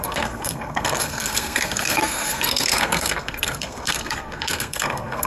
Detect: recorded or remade remade